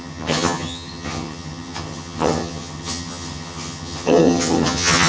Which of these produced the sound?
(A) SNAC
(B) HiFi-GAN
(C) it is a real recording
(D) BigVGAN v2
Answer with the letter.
B